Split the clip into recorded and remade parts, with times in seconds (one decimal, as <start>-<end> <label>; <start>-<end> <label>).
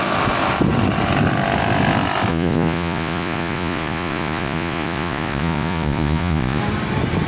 0.0-2.3 recorded; 2.3-6.6 remade; 6.6-7.3 recorded